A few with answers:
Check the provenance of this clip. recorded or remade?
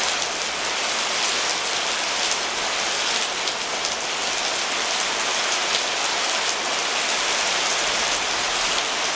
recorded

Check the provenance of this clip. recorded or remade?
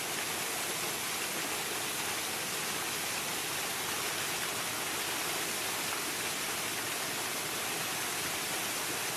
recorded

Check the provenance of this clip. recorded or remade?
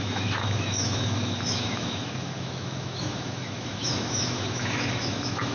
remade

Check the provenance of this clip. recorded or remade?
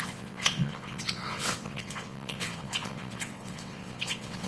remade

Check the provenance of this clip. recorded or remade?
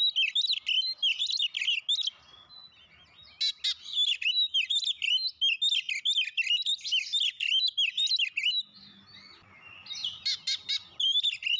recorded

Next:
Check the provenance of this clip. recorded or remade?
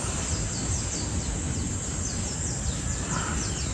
recorded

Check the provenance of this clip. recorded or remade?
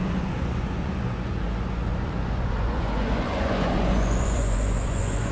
remade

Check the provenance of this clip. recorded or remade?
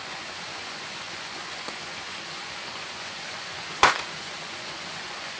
remade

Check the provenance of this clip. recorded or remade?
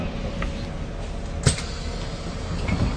recorded